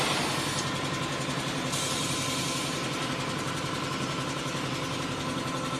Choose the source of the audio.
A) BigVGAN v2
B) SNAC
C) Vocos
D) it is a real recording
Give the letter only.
D